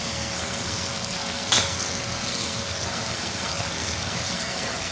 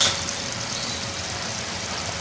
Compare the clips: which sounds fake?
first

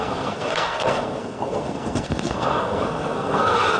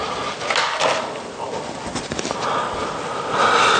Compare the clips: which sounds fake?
first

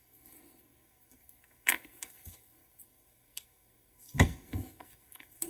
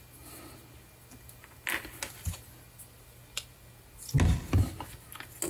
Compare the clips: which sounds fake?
first